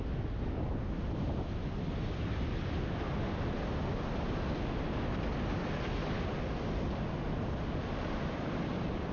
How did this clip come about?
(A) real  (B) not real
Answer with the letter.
A